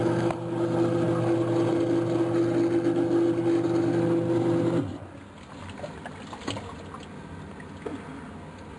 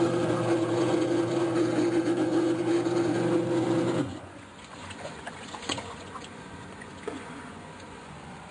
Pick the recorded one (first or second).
first